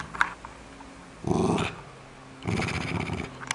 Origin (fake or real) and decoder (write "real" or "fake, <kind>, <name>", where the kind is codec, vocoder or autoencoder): real